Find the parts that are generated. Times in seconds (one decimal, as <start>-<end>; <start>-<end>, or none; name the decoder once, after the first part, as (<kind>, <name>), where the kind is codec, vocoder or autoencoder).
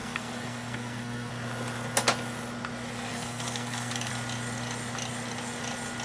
0.0-1.3 (codec, SNAC); 3.1-4.1